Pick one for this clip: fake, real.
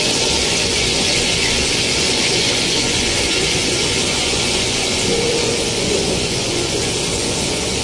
fake